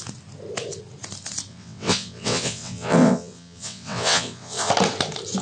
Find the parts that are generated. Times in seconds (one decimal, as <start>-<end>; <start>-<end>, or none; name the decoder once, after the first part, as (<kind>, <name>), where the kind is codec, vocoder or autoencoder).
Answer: 1.5-4.7 (vocoder, WaveNeXt)